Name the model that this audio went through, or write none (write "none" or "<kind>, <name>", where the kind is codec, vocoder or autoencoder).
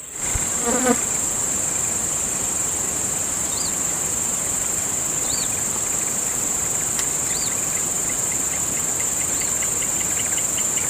vocoder, BigVGAN v2